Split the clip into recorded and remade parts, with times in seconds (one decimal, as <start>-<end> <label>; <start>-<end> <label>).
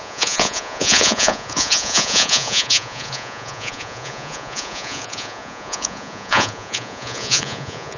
0.0-8.0 remade